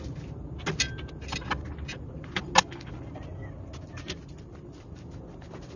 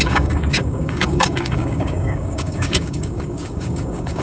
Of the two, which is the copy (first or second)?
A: second